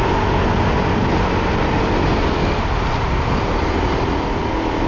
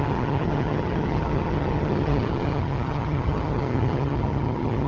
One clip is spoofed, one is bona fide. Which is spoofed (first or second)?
second